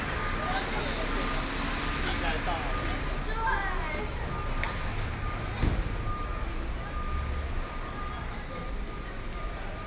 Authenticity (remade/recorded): recorded